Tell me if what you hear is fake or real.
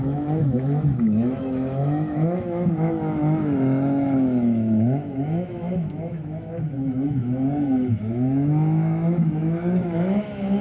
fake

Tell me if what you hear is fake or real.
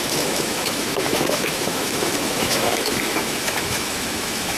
fake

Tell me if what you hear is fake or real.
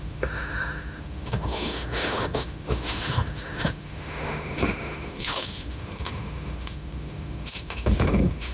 fake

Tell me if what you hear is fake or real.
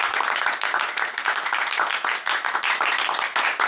real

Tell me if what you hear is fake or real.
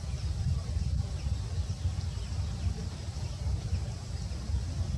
real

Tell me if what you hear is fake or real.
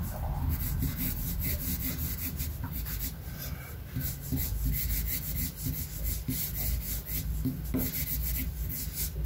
real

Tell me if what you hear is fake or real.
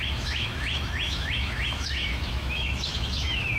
fake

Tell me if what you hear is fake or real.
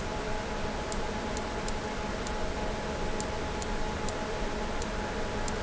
real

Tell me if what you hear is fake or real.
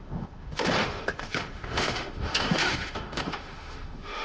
fake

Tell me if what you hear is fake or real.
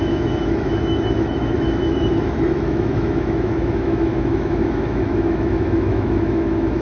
fake